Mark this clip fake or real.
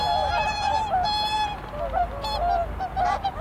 real